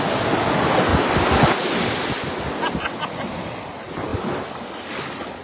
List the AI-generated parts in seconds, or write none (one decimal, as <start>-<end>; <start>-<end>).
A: 0.9-2.1; 4.1-4.9